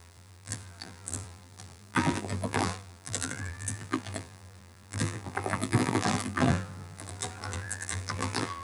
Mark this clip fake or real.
fake